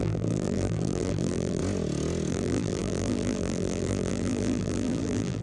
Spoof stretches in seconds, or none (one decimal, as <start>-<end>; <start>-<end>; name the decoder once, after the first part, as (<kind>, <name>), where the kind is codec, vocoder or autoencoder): 0.0-1.6 (vocoder, BigVGAN v2); 2.3-5.4